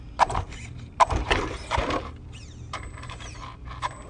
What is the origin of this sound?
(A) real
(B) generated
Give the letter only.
B